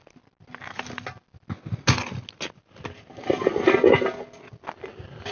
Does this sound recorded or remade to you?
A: recorded